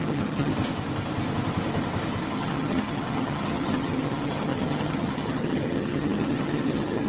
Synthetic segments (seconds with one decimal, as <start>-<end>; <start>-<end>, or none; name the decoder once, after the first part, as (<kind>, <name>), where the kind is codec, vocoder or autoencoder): 0.0-0.5 (vocoder, HiFi-GAN); 2.3-7.1